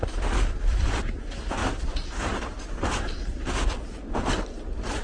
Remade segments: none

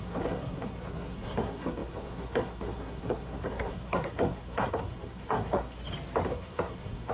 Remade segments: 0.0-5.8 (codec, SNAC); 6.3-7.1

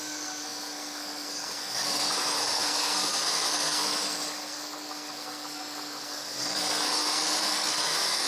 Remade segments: 0.0-8.3 (codec, SNAC)